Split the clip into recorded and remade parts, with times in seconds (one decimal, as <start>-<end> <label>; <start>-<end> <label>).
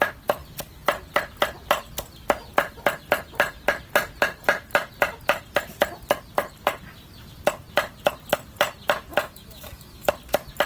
0.0-9.1 recorded; 9.1-10.1 remade; 10.1-10.7 recorded